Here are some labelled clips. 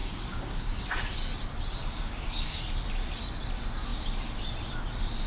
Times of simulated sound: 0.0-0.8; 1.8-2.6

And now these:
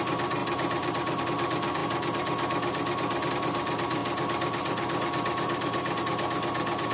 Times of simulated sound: none

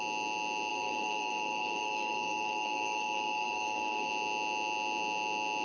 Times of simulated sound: 0.7-4.1

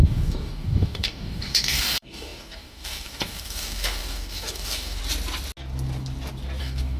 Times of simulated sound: 0.0-5.0; 6.6-7.0

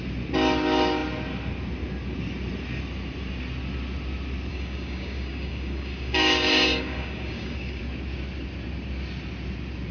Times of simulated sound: 4.5-7.8